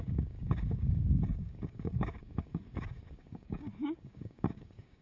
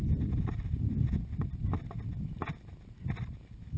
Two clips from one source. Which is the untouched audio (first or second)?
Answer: second